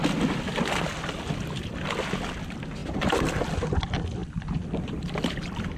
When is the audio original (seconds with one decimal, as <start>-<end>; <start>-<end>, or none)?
0.0-5.8